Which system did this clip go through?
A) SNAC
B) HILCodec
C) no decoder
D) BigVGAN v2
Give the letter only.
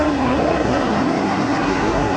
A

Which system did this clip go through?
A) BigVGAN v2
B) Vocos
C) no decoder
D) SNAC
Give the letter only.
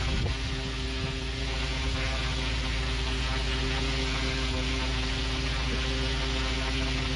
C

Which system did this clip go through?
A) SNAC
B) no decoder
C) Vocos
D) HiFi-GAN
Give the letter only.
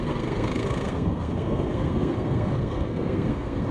A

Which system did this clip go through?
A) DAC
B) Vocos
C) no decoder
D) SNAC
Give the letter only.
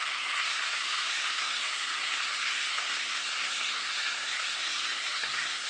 D